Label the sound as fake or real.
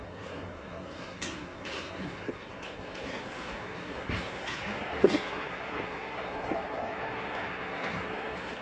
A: fake